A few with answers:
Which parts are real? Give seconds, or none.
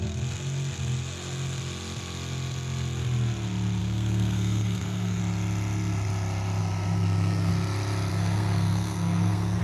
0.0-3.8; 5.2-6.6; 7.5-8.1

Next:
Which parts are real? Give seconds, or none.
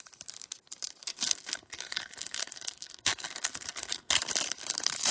0.0-1.0; 4.1-5.1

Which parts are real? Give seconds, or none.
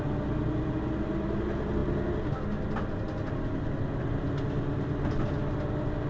0.0-6.1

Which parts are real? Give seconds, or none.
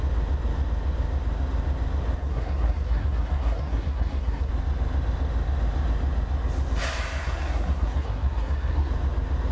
0.0-2.2; 4.5-7.2; 8.9-9.5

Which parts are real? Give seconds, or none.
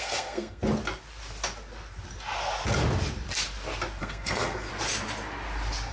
0.6-4.0; 4.7-5.9